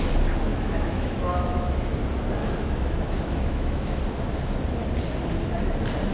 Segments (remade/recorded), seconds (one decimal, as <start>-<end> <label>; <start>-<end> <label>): 0.0-0.5 recorded; 0.5-2.0 remade; 2.0-2.4 recorded; 2.4-4.0 remade; 4.0-6.1 recorded